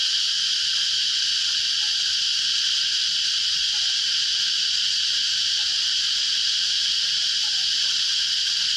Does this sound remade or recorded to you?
recorded